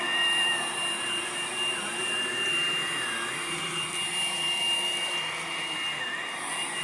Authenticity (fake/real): fake